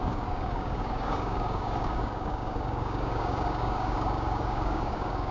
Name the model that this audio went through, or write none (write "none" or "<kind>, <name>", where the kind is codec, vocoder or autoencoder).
codec, DAC